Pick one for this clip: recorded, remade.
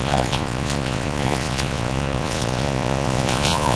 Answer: remade